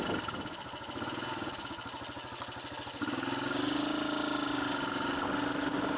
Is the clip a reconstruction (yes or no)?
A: no